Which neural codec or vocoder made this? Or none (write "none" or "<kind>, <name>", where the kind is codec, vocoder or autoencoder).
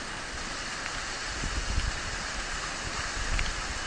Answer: none